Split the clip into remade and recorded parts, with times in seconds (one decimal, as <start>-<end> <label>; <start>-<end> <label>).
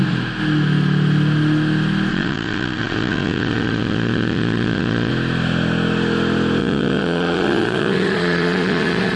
0.0-2.1 recorded; 2.1-5.1 remade; 5.1-6.6 recorded; 6.6-9.2 remade